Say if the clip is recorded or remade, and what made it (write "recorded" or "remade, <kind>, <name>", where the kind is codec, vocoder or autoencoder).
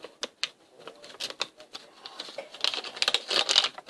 recorded